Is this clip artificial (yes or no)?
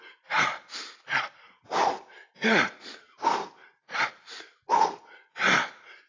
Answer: no